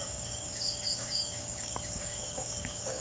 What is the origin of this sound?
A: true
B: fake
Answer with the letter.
B